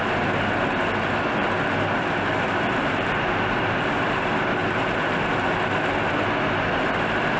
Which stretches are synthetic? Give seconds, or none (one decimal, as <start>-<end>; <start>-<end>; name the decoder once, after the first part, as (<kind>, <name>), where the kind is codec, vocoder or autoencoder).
none